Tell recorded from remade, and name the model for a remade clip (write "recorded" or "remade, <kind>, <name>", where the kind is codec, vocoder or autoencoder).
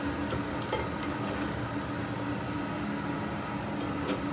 recorded